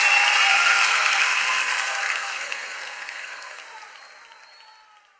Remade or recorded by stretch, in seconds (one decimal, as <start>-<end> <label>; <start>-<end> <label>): 0.0-0.5 recorded; 0.5-3.6 remade; 3.6-5.2 recorded